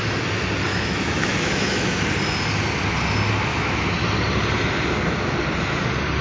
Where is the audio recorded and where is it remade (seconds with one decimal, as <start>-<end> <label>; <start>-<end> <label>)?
0.0-0.7 recorded; 0.7-2.1 remade; 2.1-3.5 recorded; 3.5-4.0 remade; 4.0-6.2 recorded